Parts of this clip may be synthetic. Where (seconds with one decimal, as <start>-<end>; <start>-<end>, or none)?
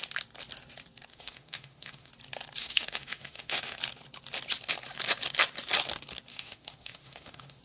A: 1.1-2.1; 2.6-3.8; 6.3-7.6